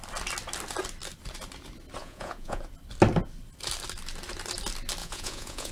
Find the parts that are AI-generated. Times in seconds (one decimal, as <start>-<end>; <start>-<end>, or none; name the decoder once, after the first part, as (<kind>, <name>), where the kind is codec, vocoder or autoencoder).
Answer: 2.0-2.6 (vocoder, Vocos); 5.0-5.7